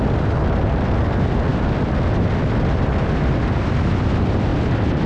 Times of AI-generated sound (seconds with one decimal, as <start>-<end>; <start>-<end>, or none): none